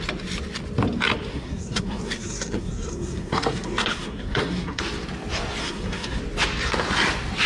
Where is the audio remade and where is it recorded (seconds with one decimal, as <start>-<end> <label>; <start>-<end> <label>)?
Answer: 0.0-1.3 recorded; 1.3-4.8 remade; 4.8-5.6 recorded; 5.6-6.2 remade; 6.2-7.5 recorded